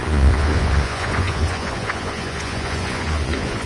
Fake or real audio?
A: fake